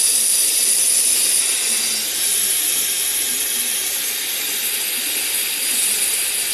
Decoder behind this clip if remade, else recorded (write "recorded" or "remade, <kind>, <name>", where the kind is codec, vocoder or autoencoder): recorded